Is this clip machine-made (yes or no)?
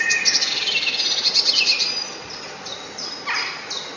no